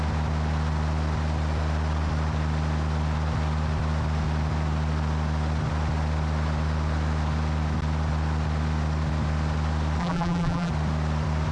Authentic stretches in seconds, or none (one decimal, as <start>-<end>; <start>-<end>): 0.0-10.0; 10.7-11.5